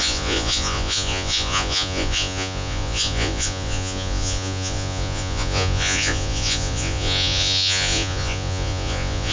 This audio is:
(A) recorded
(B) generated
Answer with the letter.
B